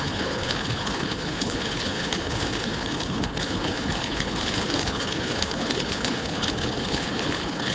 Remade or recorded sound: remade